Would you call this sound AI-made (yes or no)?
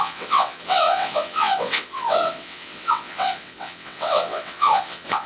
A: yes